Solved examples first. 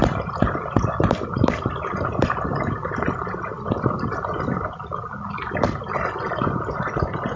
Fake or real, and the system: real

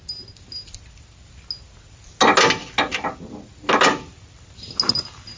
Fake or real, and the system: real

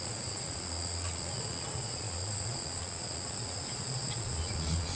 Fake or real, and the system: fake, vocoder, Vocos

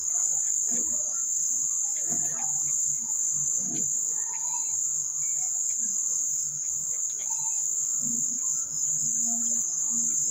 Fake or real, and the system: real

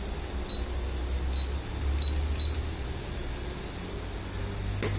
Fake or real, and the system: real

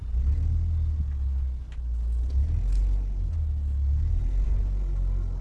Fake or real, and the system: real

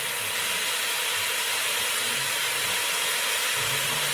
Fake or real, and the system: real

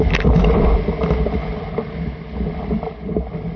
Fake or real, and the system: real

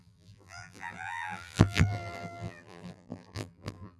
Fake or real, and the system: fake, vocoder, BigVGAN v2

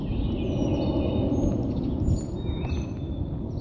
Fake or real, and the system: real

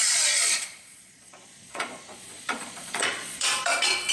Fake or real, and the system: fake, vocoder, Vocos